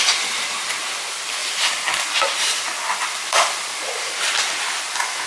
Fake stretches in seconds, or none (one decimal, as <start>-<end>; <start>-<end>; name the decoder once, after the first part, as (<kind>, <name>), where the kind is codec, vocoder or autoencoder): none